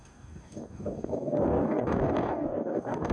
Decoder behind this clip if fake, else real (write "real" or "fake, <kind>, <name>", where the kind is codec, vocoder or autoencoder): fake, codec, DAC